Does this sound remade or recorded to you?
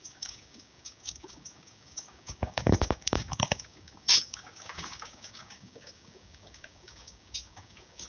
remade